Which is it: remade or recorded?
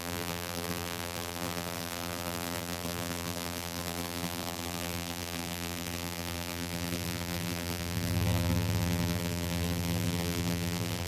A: remade